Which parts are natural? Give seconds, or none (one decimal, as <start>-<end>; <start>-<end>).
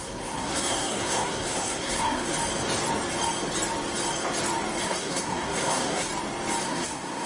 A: 2.3-4.8; 6.1-6.6